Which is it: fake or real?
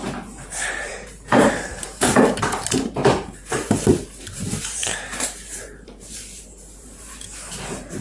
fake